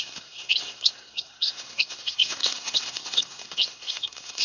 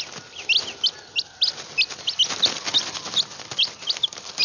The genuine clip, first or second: second